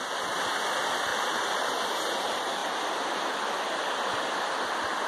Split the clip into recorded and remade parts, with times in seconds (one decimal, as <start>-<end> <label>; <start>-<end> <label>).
0.0-1.1 recorded; 1.1-1.8 remade; 1.8-5.1 recorded